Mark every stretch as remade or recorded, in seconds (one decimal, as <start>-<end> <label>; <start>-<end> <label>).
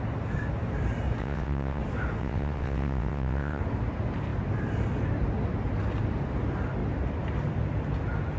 0.0-1.2 recorded; 1.2-1.8 remade; 1.8-2.2 recorded; 2.2-3.6 remade; 3.6-8.4 recorded